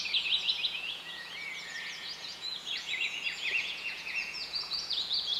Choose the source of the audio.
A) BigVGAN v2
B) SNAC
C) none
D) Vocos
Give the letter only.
D